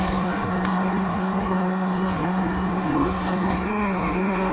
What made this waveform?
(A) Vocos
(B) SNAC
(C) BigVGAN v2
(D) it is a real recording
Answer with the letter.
B